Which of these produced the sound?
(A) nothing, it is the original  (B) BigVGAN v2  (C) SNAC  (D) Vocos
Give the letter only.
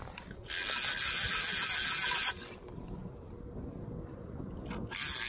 A